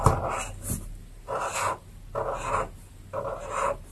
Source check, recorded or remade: recorded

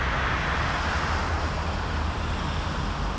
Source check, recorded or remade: recorded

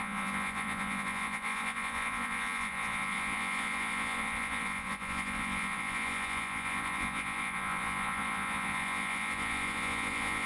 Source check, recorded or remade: remade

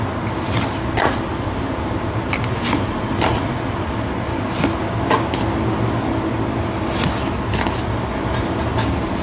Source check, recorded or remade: recorded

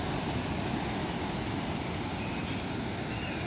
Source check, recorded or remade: recorded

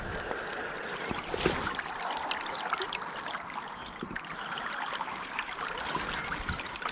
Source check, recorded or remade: recorded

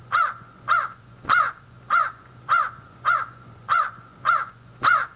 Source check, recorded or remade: remade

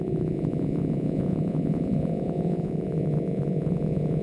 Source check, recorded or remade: remade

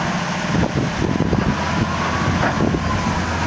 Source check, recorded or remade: recorded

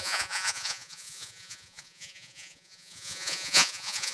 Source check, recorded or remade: remade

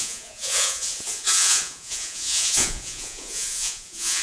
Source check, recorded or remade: remade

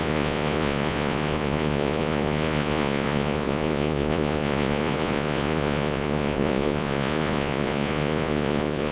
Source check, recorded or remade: remade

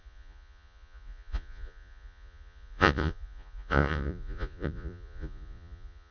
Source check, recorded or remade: remade